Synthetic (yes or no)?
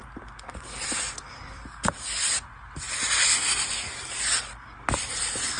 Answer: no